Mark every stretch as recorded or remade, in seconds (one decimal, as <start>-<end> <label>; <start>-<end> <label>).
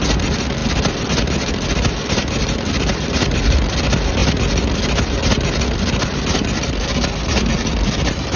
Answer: 0.0-8.4 recorded